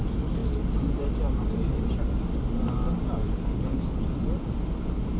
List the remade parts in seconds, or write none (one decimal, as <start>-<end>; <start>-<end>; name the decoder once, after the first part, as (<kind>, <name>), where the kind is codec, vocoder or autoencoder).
3.2-3.8 (codec, HILCodec)